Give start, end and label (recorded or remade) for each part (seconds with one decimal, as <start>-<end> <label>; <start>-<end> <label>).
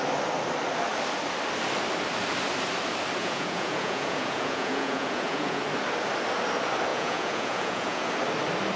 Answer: 0.0-3.2 recorded; 3.2-5.6 remade; 5.6-6.9 recorded; 6.9-8.1 remade; 8.1-8.8 recorded